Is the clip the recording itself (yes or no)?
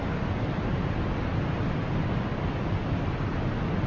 yes